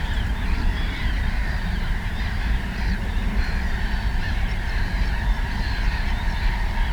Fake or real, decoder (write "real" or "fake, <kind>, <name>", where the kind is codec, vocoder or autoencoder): fake, vocoder, BigVGAN v2